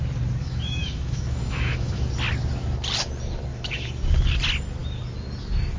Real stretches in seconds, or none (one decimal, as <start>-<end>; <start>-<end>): 0.0-0.4; 2.0-3.5; 4.0-5.8